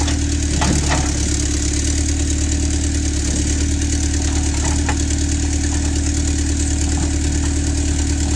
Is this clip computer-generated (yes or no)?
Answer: no